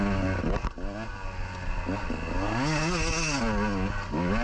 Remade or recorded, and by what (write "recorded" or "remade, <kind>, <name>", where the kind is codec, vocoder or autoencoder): recorded